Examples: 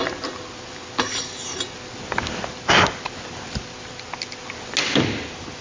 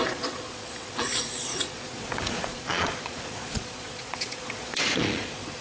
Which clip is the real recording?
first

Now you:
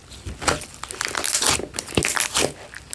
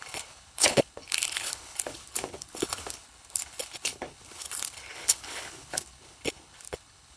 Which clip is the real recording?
first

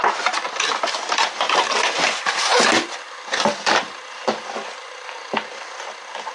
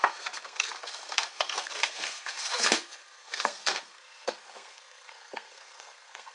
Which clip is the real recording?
first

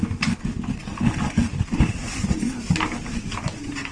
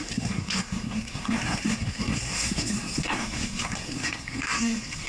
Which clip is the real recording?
first